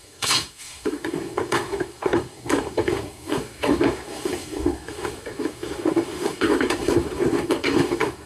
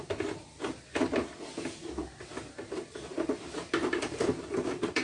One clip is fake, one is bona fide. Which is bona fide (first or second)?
second